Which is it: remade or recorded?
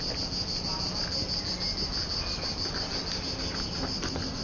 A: recorded